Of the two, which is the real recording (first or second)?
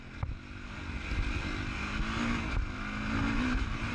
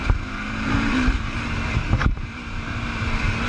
first